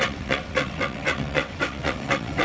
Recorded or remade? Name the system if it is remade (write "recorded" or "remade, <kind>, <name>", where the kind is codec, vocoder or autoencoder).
remade, vocoder, WaveNeXt